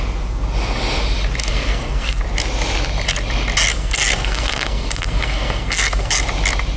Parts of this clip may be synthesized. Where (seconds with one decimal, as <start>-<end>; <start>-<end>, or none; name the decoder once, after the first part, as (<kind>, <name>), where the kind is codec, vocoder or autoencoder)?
1.4-2.2 (codec, SNAC); 3.7-6.1